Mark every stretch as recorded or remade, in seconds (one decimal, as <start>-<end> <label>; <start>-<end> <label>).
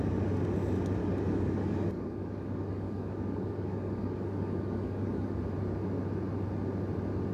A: 0.0-1.0 recorded; 1.0-5.4 remade; 5.4-7.3 recorded